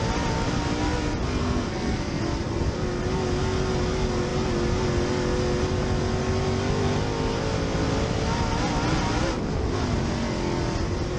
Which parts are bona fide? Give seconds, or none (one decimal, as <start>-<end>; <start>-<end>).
0.0-1.4; 2.2-11.2